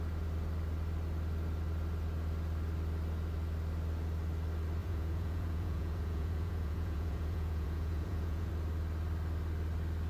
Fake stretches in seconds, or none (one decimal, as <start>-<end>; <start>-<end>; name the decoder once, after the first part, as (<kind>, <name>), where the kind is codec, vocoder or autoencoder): 4.8-8.5 (vocoder, Vocos)